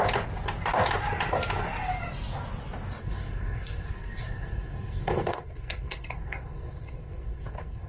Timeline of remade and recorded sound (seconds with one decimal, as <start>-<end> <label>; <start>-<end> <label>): 0.0-3.0 recorded; 3.0-7.9 remade